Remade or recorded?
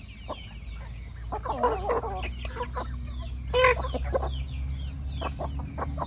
recorded